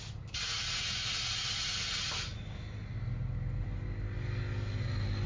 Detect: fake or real real